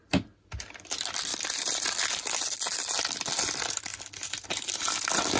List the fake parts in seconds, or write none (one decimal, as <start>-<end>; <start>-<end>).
1.3-1.8